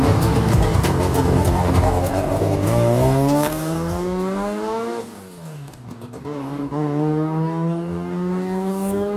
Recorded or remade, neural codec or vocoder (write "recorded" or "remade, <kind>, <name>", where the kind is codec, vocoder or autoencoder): remade, codec, DAC